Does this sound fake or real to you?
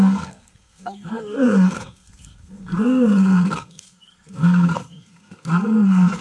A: fake